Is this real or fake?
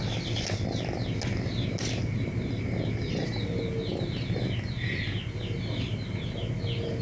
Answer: real